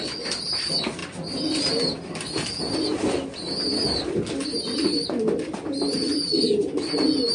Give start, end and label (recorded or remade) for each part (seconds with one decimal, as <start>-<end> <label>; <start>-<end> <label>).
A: 0.0-7.3 recorded